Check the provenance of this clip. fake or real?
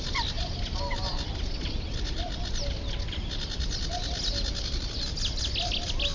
real